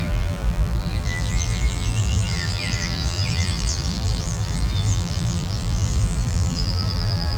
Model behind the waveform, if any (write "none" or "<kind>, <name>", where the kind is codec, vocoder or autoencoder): vocoder, BigVGAN v2